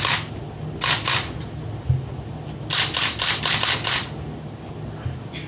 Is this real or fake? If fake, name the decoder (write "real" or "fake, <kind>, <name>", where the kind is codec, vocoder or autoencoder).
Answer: real